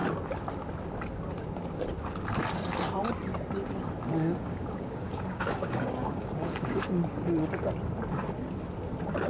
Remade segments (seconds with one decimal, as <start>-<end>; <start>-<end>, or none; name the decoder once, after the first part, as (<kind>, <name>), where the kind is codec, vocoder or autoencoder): 4.1-6.9 (codec, DAC)